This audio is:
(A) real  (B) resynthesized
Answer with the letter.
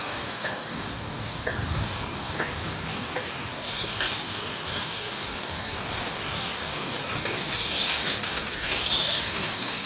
B